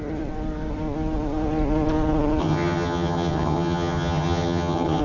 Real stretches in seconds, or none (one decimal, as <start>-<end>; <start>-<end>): 0.0-2.4